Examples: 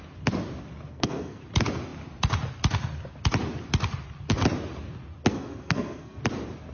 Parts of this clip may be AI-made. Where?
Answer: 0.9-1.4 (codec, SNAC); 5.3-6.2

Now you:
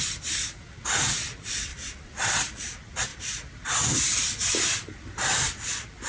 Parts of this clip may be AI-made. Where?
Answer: 1.7-2.6 (vocoder, BigVGAN v2)